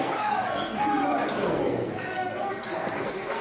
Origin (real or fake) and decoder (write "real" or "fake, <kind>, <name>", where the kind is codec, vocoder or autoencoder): fake, codec, SNAC